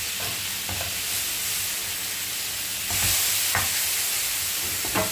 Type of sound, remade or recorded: recorded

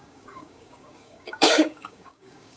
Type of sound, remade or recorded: remade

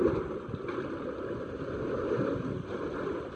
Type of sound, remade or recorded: recorded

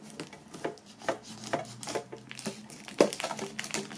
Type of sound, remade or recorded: recorded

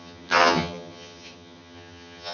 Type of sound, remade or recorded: remade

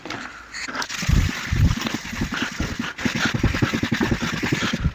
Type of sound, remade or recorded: recorded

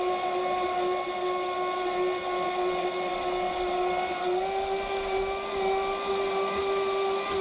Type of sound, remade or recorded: recorded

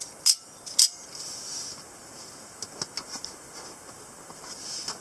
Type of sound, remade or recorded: recorded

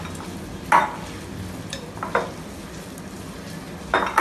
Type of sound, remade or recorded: recorded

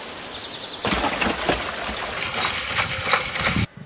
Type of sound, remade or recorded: recorded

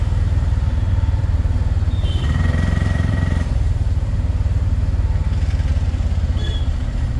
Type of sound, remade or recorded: remade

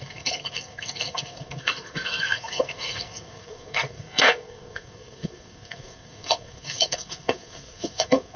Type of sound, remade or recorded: remade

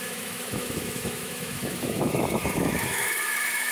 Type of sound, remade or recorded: remade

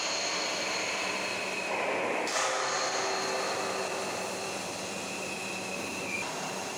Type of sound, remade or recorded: recorded